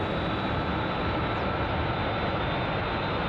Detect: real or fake real